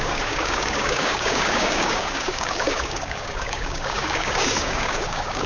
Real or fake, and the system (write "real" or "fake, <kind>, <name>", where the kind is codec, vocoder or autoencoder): fake, codec, DAC